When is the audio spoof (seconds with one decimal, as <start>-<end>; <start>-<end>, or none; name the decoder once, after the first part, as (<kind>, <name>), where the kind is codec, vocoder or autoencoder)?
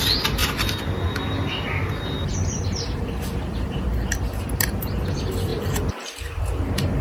0.4-0.9 (vocoder, BigVGAN v2); 2.3-3.4; 5.5-6.4